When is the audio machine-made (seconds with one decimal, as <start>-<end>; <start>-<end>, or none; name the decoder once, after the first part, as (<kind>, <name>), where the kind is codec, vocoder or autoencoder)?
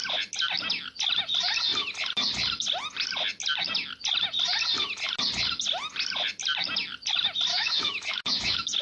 7.5-8.8 (autoencoder, DAC-VAE)